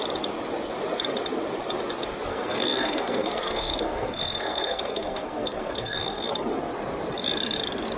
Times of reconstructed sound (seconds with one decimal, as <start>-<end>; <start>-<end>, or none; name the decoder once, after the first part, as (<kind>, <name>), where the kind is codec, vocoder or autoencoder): 2.3-6.3 (codec, SNAC)